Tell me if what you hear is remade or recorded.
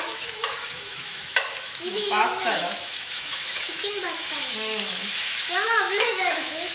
remade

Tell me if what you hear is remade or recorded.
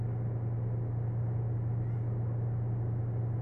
recorded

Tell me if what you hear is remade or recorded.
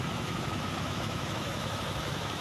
remade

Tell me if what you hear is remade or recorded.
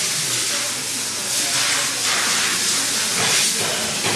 recorded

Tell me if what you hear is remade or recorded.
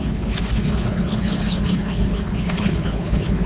remade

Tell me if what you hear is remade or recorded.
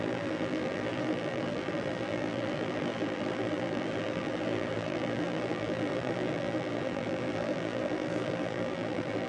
remade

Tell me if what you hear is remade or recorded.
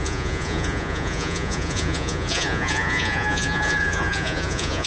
remade